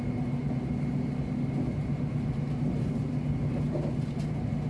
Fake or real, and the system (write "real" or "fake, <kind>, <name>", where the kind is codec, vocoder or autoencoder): real